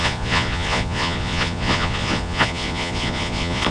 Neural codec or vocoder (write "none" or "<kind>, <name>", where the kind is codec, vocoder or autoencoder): vocoder, Vocos